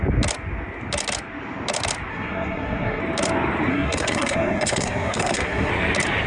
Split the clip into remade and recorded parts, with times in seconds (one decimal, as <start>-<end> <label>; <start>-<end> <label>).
0.0-2.1 recorded; 2.1-3.0 remade; 3.0-3.7 recorded; 3.7-5.7 remade; 5.7-6.3 recorded